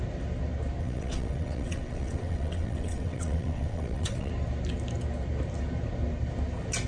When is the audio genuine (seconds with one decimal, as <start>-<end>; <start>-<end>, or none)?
0.0-0.8; 4.3-6.9